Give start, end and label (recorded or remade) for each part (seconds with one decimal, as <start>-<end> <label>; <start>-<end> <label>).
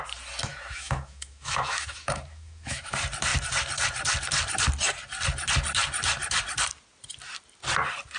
0.0-0.5 recorded; 0.5-2.9 remade; 2.9-8.2 recorded